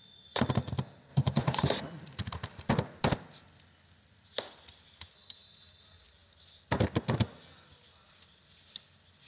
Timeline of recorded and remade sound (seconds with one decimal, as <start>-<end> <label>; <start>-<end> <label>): 0.0-1.1 recorded; 1.1-2.7 remade; 2.7-9.3 recorded

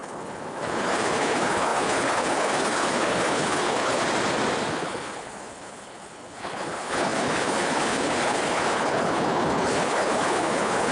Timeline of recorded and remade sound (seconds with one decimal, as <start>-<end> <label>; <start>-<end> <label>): 0.0-4.0 remade; 4.0-4.7 recorded; 4.7-10.9 remade

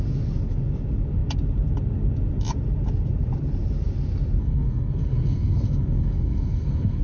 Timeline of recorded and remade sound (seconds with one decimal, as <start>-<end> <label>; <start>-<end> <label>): 0.0-4.4 recorded; 4.4-7.0 remade

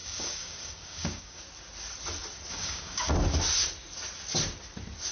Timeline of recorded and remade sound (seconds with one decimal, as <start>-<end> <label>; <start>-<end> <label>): 0.0-1.4 remade; 1.4-2.5 recorded; 2.5-3.1 remade; 3.1-5.1 recorded

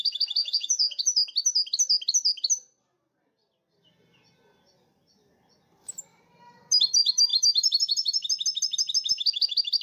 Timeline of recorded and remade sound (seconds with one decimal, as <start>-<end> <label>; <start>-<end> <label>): 0.0-0.4 recorded; 0.4-1.0 remade; 1.0-9.8 recorded

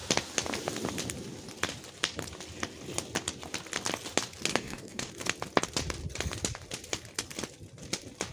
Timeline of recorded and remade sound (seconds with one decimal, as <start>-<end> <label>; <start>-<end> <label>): 0.0-4.5 recorded; 4.5-5.1 remade; 5.1-8.3 recorded